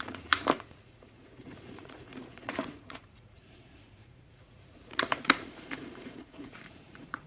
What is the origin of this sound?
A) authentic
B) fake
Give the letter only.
B